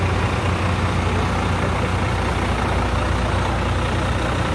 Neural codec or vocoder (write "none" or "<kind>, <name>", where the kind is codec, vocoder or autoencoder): none